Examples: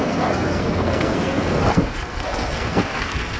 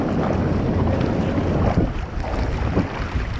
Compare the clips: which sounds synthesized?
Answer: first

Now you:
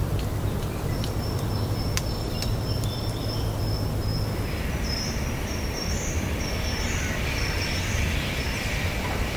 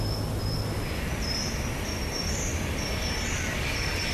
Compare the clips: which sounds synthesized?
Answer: first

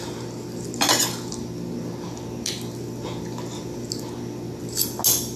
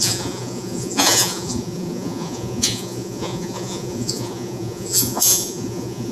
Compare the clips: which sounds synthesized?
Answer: second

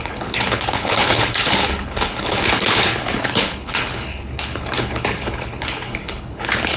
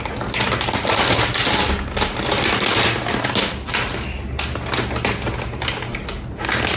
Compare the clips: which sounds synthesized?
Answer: first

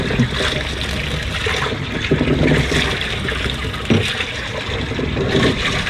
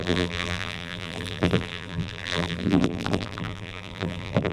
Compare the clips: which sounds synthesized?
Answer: second